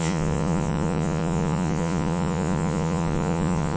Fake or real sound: fake